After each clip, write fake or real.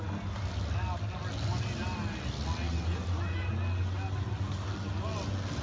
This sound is real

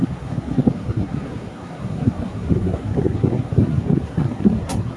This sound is fake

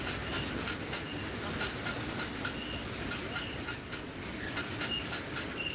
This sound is real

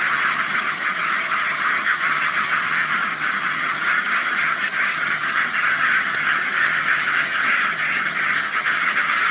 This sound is fake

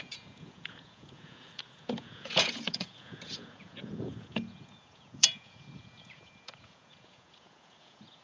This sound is fake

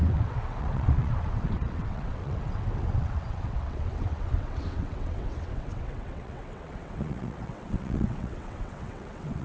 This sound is fake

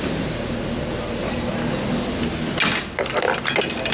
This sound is real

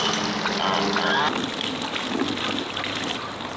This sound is real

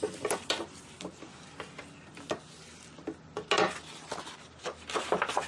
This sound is real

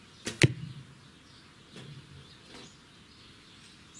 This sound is real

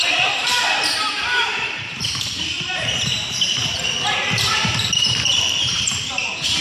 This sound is fake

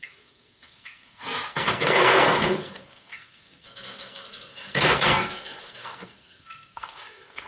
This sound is fake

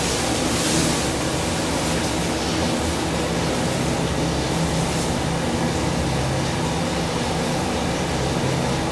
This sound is real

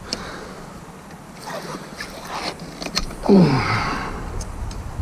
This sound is real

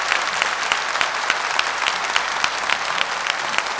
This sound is real